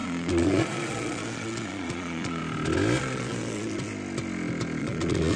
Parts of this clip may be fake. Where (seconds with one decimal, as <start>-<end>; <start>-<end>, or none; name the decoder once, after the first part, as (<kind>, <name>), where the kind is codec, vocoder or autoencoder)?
0.0-2.4 (vocoder, Vocos); 3.0-3.9; 4.8-5.4